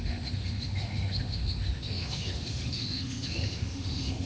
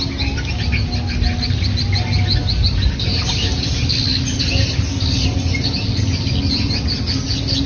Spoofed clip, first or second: first